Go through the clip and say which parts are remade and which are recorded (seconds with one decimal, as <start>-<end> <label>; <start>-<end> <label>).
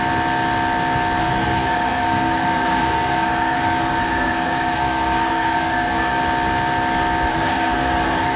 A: 0.0-1.2 recorded; 1.2-6.2 remade; 6.2-7.3 recorded; 7.3-8.4 remade